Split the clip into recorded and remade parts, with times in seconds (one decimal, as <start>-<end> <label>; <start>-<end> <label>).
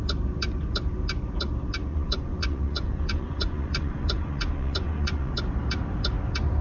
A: 0.0-1.9 recorded; 1.9-5.3 remade; 5.3-6.6 recorded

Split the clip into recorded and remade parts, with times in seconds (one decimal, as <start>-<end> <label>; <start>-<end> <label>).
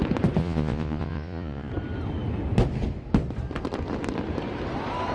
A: 0.0-0.4 recorded; 0.4-1.7 remade; 1.7-5.1 recorded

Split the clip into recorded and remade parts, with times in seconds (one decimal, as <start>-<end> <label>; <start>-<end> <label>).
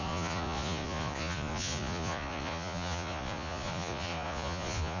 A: 0.0-5.0 remade